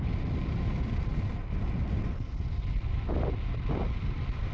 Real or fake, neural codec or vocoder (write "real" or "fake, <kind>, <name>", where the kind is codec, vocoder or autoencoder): real